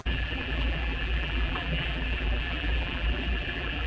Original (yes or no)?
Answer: no